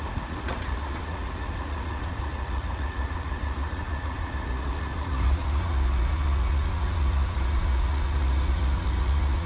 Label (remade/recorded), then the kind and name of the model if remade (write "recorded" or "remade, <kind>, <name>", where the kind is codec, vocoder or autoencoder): remade, vocoder, Vocos